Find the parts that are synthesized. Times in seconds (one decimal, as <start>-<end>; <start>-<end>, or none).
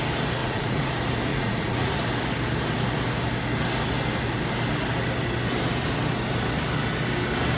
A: 0.4-0.9; 1.3-1.9